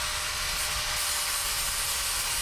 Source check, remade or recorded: recorded